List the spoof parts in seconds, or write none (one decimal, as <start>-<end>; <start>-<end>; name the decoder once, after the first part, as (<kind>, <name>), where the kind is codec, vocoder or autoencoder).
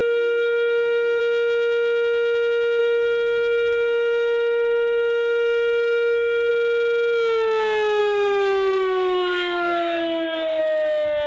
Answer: 0.0-1.2 (codec, SNAC); 2.8-6.5; 8.0-10.6